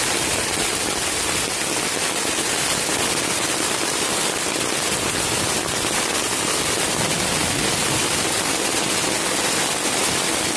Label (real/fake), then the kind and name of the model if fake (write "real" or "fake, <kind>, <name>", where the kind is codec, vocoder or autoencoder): real